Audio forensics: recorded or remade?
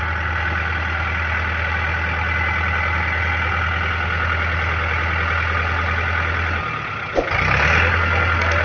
recorded